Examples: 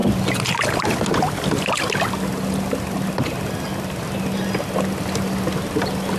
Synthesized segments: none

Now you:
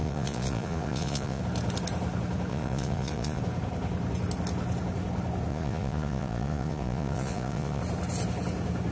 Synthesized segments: 0.0-1.4 (vocoder, Vocos); 2.5-3.4; 5.5-7.8

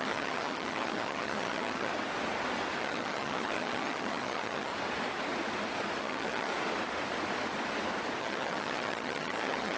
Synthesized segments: 0.0-1.9 (vocoder, HiFi-GAN); 2.8-4.7; 6.0-6.5; 8.2-9.8